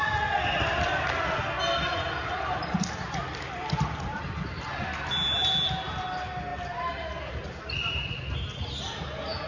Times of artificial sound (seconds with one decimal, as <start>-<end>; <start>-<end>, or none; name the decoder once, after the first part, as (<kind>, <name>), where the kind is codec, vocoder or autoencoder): none